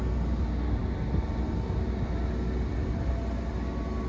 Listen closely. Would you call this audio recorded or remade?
recorded